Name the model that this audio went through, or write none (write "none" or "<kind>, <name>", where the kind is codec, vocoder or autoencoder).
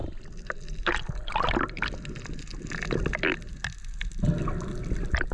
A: none